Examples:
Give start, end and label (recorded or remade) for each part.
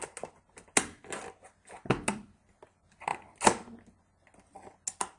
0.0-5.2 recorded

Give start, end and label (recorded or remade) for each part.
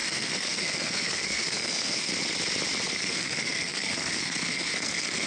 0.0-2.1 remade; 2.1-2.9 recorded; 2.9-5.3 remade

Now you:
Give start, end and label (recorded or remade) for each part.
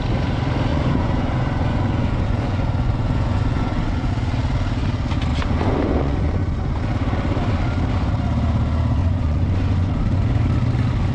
0.0-0.7 recorded; 0.7-4.1 remade; 4.1-5.3 recorded; 5.3-6.8 remade; 6.8-9.0 recorded; 9.0-10.4 remade; 10.4-11.1 recorded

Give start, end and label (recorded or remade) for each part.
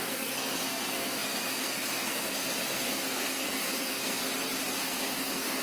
0.0-4.2 remade; 4.2-4.8 recorded; 4.8-5.6 remade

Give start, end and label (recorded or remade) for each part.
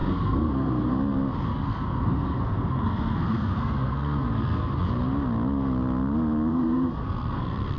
0.0-1.0 remade; 1.0-1.5 recorded; 1.5-4.7 remade; 4.7-6.5 recorded; 6.5-7.8 remade